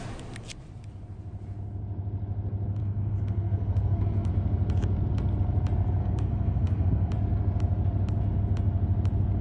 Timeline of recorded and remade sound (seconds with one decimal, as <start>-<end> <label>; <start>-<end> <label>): 0.0-2.8 recorded; 2.8-4.3 remade; 4.3-6.0 recorded; 6.0-7.1 remade; 7.1-9.4 recorded

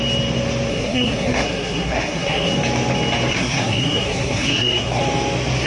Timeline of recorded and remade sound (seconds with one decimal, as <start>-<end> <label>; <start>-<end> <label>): 0.0-0.7 recorded; 0.7-2.5 remade; 2.5-3.3 recorded; 3.3-5.0 remade; 5.0-5.7 recorded

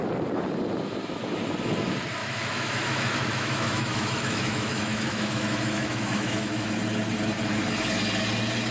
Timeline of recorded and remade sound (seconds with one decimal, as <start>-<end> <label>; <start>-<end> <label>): 0.0-2.2 recorded; 2.2-6.7 remade; 6.7-8.7 recorded